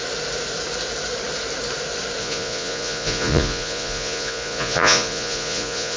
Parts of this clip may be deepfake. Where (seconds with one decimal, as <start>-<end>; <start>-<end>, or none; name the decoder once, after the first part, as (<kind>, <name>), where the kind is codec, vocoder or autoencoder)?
2.2-6.0 (vocoder, Vocos)